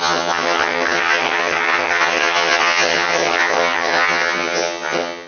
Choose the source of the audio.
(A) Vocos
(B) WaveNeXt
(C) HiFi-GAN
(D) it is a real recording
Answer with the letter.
C